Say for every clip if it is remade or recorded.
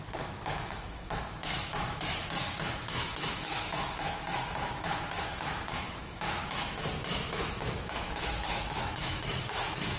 remade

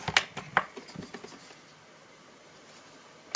recorded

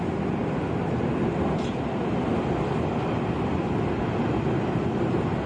recorded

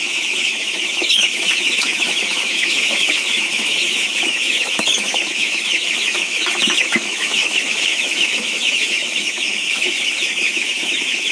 remade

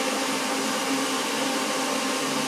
recorded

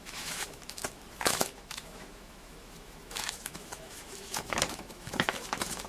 remade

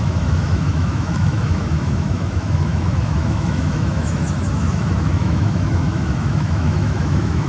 remade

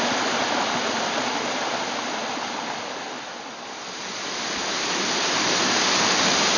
recorded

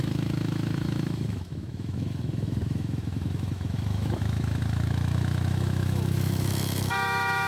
remade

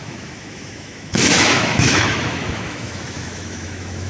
remade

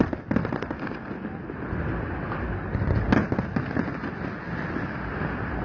recorded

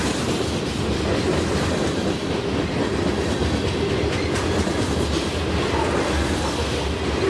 recorded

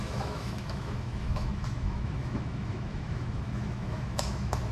remade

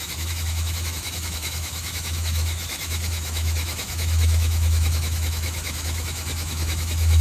remade